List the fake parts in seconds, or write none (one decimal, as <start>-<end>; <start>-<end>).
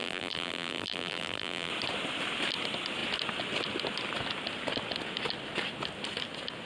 0.0-1.7